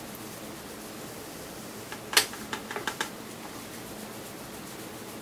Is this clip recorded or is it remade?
recorded